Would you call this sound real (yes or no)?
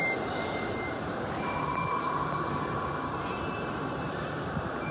no